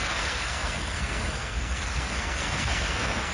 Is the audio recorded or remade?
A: remade